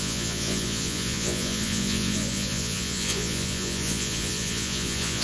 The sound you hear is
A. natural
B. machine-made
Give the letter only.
B